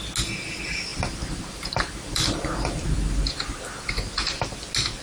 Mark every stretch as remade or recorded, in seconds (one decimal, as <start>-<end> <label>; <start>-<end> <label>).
0.0-0.9 recorded; 0.9-3.9 remade; 3.9-5.0 recorded